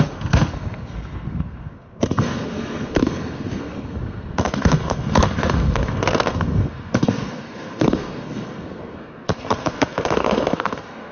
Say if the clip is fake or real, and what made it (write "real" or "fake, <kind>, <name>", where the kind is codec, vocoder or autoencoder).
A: fake, codec, SNAC